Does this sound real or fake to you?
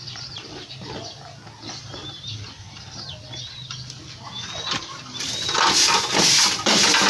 real